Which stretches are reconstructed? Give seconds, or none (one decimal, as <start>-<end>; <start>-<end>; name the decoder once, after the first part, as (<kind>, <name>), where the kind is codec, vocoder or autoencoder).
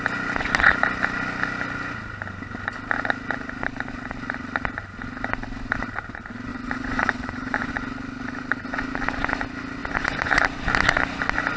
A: 6.5-7.7 (vocoder, Vocos); 9.8-10.4